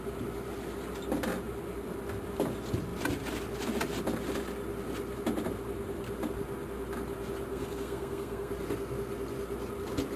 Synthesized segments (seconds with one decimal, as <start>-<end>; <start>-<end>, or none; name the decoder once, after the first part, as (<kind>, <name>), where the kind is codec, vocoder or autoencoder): 7.5-8.5 (codec, SNAC)